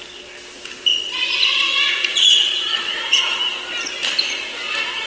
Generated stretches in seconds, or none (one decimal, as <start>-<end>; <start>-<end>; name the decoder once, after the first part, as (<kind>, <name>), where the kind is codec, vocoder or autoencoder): 0.9-3.4 (vocoder, Vocos)